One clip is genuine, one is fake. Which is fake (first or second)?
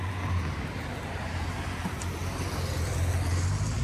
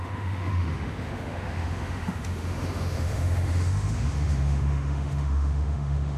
second